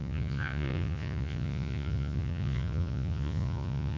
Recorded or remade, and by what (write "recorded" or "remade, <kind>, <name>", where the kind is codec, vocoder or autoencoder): remade, vocoder, Vocos